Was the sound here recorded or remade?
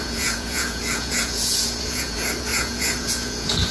remade